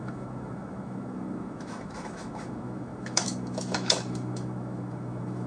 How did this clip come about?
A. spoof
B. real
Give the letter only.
A